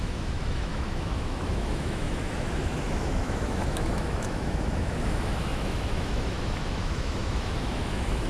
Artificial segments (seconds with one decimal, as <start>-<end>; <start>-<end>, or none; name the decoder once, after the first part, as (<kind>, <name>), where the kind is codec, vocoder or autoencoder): 0.0-8.3 (autoencoder, DAC-VAE)